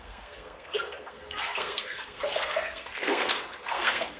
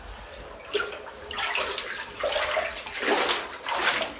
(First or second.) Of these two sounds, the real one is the second